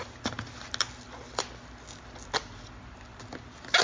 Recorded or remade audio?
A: recorded